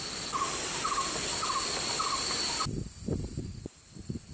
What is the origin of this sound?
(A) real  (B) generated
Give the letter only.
A